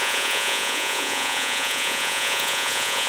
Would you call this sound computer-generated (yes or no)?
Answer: yes